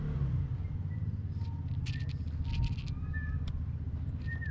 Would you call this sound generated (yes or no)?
no